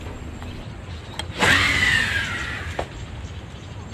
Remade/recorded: recorded